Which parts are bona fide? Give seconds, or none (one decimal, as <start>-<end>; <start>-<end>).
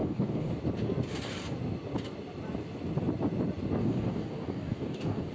0.5-3.8